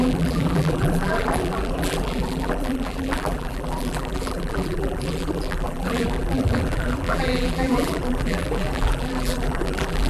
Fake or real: fake